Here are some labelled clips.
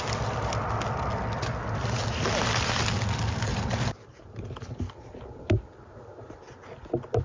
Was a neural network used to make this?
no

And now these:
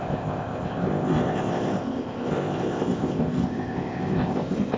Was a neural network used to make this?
yes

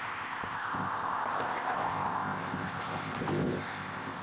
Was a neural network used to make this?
yes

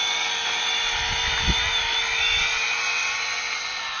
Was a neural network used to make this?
no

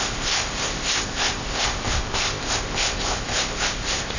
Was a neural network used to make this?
yes